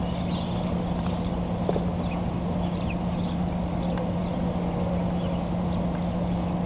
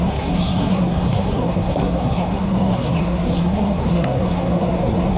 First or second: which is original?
first